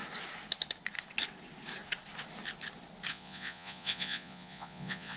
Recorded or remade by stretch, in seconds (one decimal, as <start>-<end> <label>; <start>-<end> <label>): 0.0-3.1 recorded; 3.1-5.2 remade